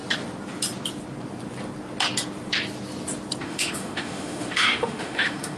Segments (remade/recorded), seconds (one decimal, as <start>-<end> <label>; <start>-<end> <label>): 0.0-3.4 recorded; 3.4-5.6 remade